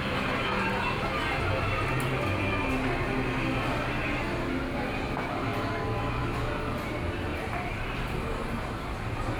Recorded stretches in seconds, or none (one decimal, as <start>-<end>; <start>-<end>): 0.0-7.3; 8.5-9.4